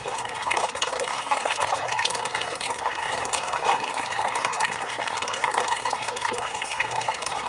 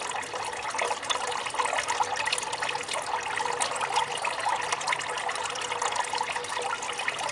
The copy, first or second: first